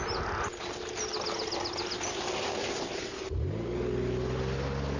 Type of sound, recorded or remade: recorded